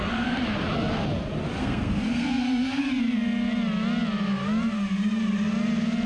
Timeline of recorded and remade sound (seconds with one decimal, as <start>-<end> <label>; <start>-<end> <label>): 0.0-0.4 remade; 0.4-1.6 recorded; 1.6-2.8 remade; 2.8-6.1 recorded